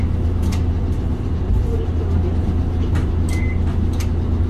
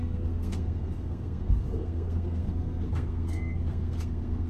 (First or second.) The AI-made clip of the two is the second